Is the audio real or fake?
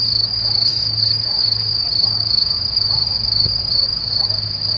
fake